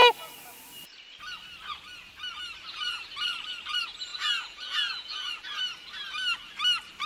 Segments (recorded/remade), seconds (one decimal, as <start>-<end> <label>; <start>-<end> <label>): 0.0-4.1 recorded; 4.1-5.6 remade; 5.6-7.1 recorded